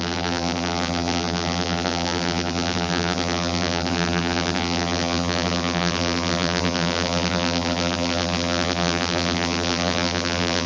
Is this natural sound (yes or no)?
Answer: no